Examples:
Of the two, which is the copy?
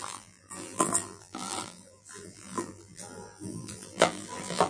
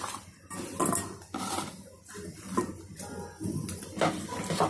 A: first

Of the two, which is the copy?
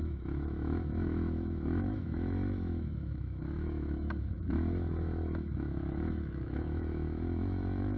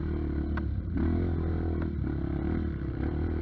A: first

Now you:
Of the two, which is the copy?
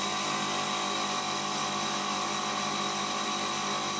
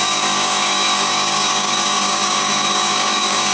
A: second